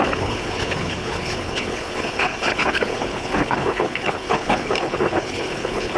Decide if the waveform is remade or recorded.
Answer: remade